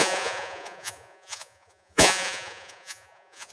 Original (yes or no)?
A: no